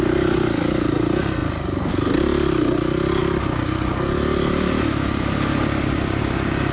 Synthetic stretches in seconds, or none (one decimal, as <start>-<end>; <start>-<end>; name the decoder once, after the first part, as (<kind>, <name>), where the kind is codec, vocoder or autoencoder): none

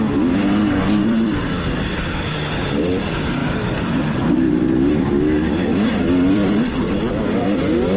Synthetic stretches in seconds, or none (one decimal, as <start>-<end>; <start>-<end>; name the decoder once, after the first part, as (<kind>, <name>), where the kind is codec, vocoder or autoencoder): 1.0-2.5 (vocoder, BigVGAN v2); 3.4-5.1; 5.7-7.1